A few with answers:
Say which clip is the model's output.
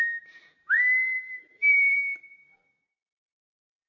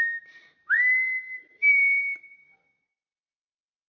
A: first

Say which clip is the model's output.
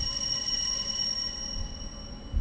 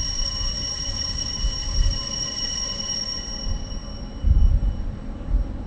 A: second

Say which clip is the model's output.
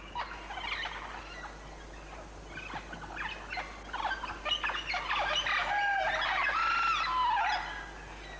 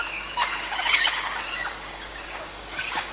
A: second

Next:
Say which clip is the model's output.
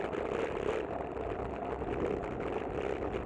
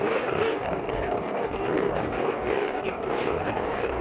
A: second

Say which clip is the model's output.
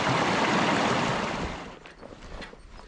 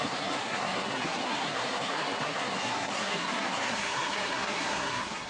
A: second